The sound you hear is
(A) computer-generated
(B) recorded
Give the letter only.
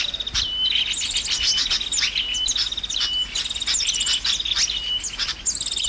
B